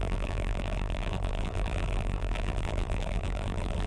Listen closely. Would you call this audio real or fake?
fake